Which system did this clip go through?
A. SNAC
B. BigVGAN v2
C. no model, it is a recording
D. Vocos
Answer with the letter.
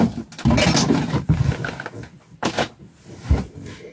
C